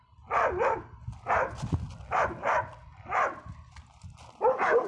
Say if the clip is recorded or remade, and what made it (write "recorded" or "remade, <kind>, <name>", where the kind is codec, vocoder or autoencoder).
recorded